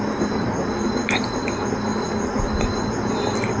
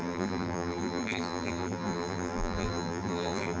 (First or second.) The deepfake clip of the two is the second